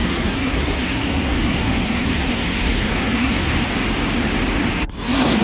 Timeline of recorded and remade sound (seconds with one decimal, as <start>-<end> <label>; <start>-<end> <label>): 0.0-3.5 remade; 3.5-4.7 recorded; 4.7-5.4 remade